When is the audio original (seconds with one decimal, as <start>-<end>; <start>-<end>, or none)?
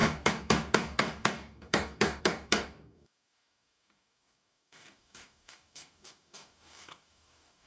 none